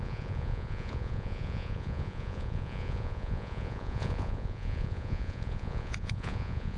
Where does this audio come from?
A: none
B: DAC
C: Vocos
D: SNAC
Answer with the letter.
C